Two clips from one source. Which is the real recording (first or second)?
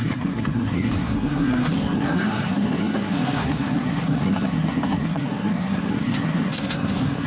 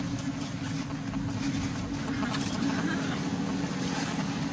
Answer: second